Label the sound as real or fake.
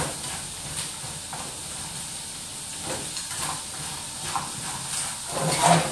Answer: real